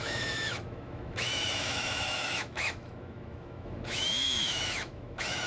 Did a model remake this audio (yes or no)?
yes